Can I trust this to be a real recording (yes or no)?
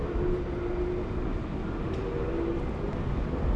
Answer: yes